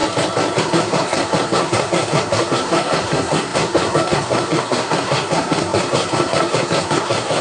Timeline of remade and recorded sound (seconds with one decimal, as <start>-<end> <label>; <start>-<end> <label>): 0.0-0.6 recorded; 0.6-7.4 remade